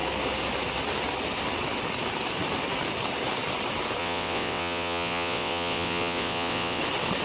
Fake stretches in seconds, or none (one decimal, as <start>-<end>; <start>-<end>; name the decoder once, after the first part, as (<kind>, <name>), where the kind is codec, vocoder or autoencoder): 4.0-6.8 (vocoder, WaveNeXt)